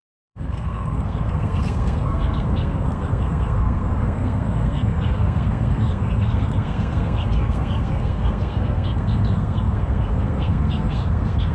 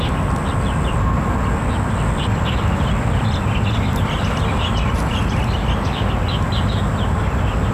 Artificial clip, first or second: first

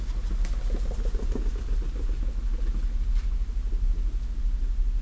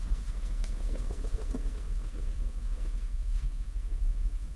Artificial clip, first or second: second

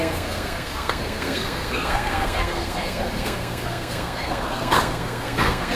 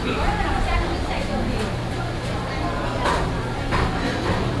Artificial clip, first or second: first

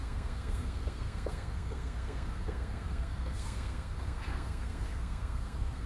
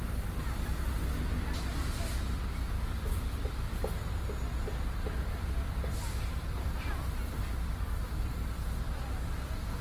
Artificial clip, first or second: first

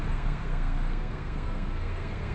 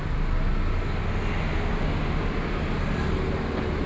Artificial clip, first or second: first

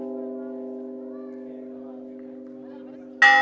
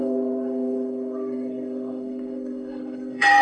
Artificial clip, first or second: second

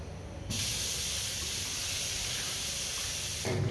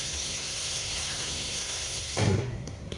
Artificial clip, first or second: second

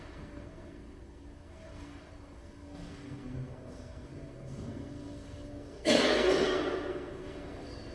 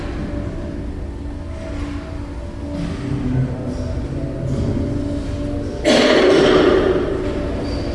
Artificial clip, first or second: first